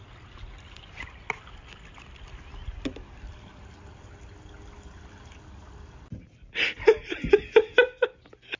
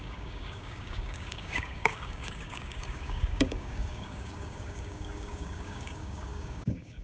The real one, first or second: first